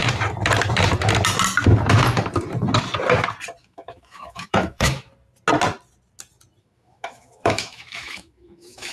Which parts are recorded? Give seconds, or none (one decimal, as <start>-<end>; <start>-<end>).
0.0-3.6; 5.1-6.6